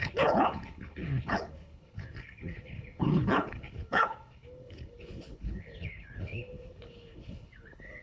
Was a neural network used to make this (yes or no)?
yes